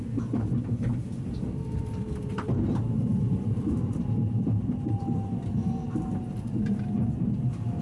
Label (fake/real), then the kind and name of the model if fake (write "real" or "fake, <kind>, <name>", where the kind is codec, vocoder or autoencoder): fake, vocoder, BigVGAN v2